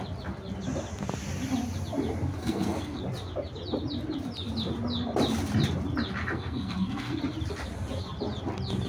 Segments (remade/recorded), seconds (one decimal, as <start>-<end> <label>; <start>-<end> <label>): 0.0-2.4 recorded; 2.4-3.0 remade; 3.0-6.2 recorded; 6.2-7.2 remade; 7.2-8.9 recorded